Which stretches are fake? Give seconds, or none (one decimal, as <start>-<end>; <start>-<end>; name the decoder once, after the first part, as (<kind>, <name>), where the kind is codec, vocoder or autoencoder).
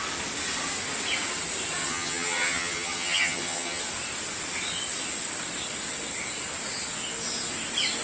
1.8-3.8 (vocoder, HiFi-GAN)